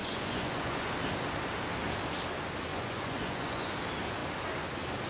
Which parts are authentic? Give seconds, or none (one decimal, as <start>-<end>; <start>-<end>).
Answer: 0.9-2.7; 3.7-5.1